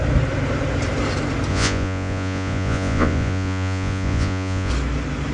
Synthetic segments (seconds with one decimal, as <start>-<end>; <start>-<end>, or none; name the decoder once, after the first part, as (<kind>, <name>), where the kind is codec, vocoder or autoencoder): 1.5-4.7 (vocoder, Vocos)